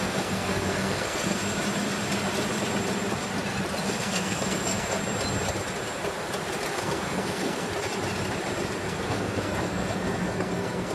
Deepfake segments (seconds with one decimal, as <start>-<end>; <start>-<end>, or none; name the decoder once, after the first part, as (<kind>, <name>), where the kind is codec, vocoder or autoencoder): 0.0-1.4 (codec, SNAC); 3.8-5.0; 6.7-7.7; 8.8-10.9